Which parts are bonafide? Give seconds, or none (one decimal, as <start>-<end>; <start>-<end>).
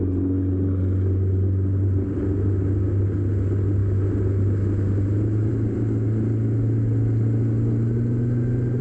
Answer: 0.0-8.8